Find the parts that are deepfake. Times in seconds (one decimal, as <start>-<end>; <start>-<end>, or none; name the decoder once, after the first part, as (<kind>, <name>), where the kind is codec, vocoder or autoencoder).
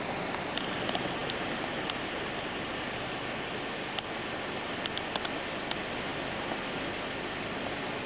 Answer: 6.1-6.8 (vocoder, BigVGAN v2)